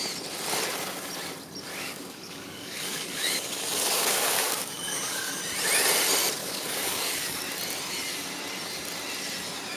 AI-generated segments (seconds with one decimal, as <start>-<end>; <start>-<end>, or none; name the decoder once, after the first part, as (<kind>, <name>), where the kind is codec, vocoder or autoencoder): 1.7-5.4 (codec, DAC); 6.4-7.4